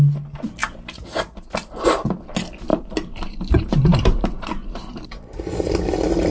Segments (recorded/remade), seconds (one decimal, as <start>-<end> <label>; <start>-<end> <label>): 0.0-0.6 recorded; 0.6-1.5 remade; 1.5-2.7 recorded; 2.7-5.7 remade; 5.7-6.3 recorded